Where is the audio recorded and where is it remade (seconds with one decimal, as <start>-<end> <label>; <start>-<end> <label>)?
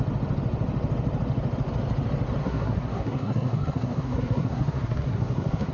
0.0-2.4 recorded; 2.4-5.7 remade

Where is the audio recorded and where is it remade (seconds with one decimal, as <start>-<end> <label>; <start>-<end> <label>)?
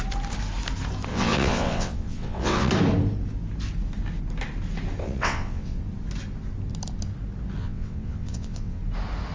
0.0-1.1 recorded; 1.1-2.7 remade; 2.7-5.0 recorded; 5.0-5.8 remade; 5.8-7.6 recorded; 7.6-8.8 remade; 8.8-9.3 recorded